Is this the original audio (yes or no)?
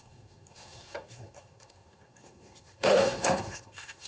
no